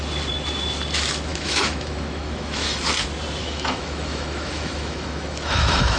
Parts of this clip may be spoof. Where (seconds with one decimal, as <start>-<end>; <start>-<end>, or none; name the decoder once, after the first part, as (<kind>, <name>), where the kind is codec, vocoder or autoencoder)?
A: 1.3-2.8 (autoencoder, DAC-VAE); 3.4-6.0